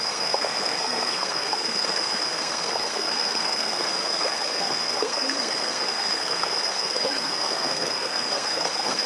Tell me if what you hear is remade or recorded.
remade